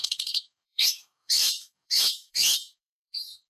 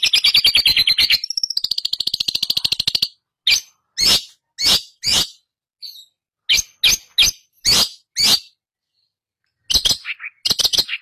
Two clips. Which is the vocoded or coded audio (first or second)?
first